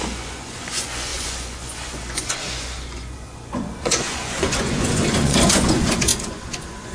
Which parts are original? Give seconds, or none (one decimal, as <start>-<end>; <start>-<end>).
none